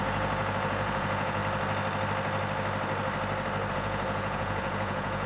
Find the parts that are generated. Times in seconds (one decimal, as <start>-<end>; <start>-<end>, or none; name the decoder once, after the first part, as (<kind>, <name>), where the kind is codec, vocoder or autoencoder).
0.0-1.4 (vocoder, Vocos); 3.7-5.3